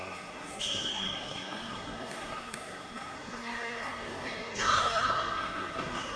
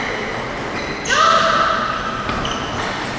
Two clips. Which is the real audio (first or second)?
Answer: second